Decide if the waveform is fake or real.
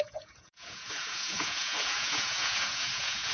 fake